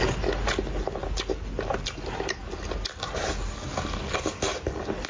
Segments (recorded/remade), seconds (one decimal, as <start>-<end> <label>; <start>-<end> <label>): 0.0-5.1 recorded